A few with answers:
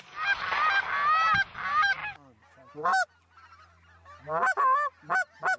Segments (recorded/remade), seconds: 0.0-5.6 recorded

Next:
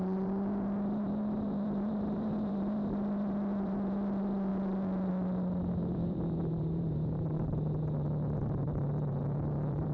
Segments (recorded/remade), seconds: 0.0-9.9 remade